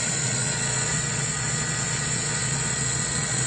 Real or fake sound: fake